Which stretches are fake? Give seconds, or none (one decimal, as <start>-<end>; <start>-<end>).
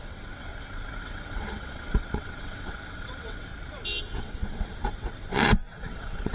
0.0-0.5; 1.0-3.5; 4.2-6.3